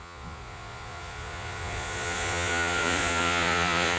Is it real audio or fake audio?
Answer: fake